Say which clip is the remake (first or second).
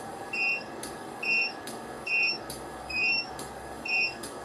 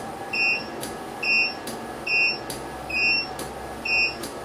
first